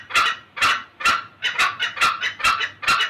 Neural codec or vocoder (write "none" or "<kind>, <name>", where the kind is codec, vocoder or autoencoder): none